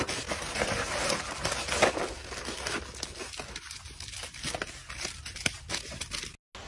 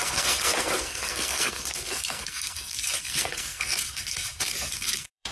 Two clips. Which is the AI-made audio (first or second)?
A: second